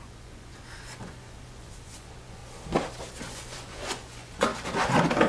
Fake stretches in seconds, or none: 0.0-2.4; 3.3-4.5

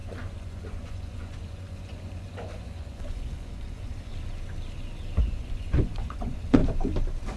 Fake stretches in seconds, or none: 0.0-4.1; 5.2-6.6

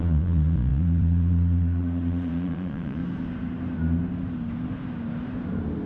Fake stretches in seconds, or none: 0.0-3.0

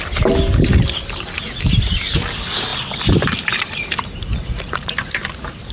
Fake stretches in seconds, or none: 4.3-4.9

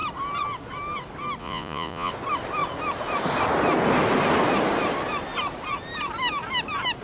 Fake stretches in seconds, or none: 1.4-2.1

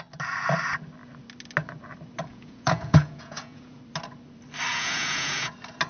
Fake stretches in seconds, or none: 2.3-3.8; 4.7-5.5

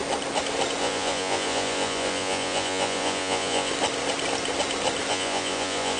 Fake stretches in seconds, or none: 0.8-3.7; 5.1-6.0